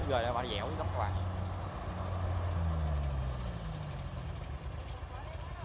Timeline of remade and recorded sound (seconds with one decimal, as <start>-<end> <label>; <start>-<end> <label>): 0.0-5.6 recorded